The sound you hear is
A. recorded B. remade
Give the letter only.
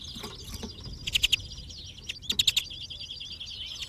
A